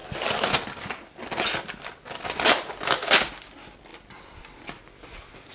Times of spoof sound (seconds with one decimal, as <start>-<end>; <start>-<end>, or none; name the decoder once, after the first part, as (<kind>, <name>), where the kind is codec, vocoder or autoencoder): none